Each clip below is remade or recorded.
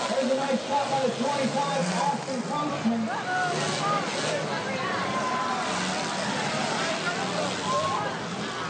recorded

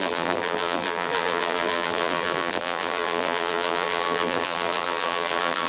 remade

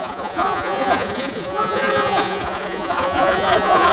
remade